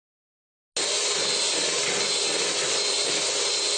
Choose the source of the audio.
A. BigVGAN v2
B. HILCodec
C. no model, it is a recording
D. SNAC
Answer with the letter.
C